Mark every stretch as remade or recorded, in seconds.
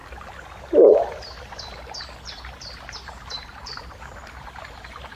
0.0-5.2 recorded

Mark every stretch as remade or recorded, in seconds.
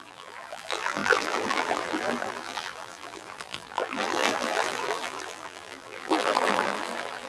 0.0-7.3 remade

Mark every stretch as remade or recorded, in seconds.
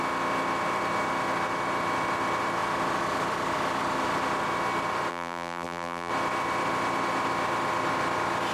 0.0-5.1 recorded; 5.1-6.1 remade; 6.1-8.5 recorded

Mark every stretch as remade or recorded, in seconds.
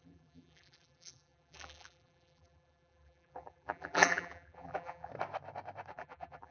0.0-5.1 remade; 5.1-5.9 recorded; 5.9-6.5 remade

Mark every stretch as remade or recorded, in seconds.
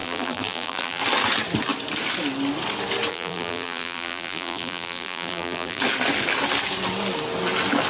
0.0-1.0 remade; 1.0-3.1 recorded; 3.1-5.8 remade; 5.8-7.9 recorded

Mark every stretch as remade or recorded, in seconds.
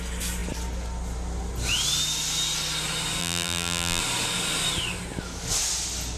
0.0-3.2 recorded; 3.2-4.0 remade; 4.0-6.2 recorded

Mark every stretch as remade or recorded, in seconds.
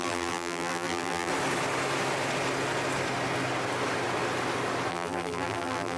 0.0-1.3 remade; 1.3-4.9 recorded; 4.9-6.0 remade